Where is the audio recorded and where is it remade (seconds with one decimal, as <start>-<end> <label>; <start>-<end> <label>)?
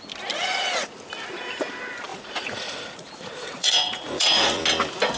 0.0-2.1 recorded; 2.1-4.6 remade; 4.6-5.2 recorded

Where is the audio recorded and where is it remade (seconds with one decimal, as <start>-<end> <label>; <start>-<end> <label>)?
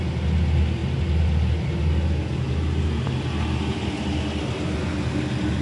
0.0-5.6 recorded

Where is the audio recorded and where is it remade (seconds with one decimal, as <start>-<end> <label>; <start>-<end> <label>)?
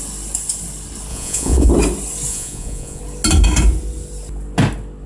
0.0-1.1 recorded; 1.1-1.7 remade; 1.7-2.3 recorded; 2.3-3.0 remade; 3.0-5.1 recorded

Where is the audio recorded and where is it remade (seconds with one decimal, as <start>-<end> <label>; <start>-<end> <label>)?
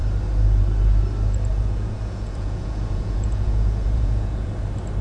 0.0-1.5 recorded; 1.5-4.5 remade; 4.5-5.0 recorded